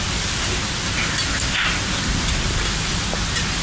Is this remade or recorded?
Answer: recorded